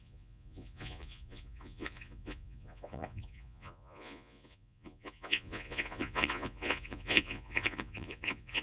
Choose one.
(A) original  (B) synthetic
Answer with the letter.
B